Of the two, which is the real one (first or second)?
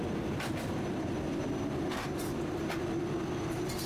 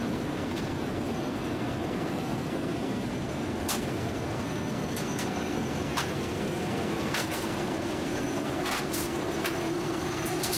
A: first